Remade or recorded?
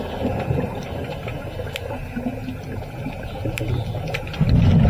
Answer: recorded